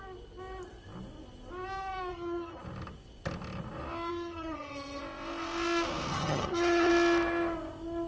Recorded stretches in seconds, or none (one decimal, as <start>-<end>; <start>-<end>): 0.0-2.1; 2.6-4.1; 5.0-6.1; 6.9-8.1